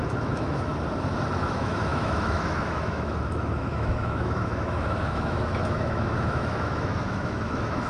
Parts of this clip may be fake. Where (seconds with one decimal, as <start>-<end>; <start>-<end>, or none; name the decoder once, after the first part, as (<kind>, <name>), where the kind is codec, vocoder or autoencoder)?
0.0-0.7 (autoencoder, DAC-VAE); 1.4-7.9